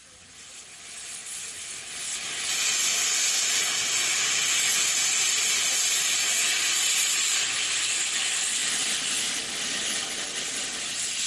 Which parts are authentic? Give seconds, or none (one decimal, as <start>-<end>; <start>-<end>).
0.0-11.3